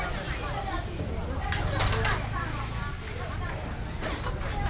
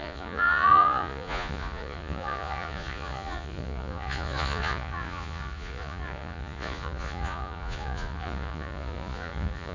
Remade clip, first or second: second